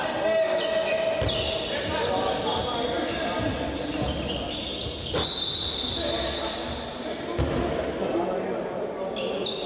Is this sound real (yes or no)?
yes